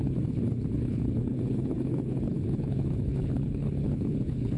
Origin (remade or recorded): remade